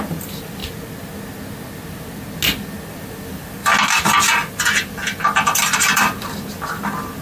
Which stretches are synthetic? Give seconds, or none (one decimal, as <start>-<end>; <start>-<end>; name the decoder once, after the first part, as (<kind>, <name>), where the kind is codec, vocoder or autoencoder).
0.0-0.6 (vocoder, BigVGAN v2); 2.9-3.6; 4.5-7.2